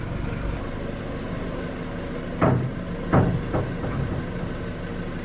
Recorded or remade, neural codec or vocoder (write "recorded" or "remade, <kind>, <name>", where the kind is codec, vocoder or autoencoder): recorded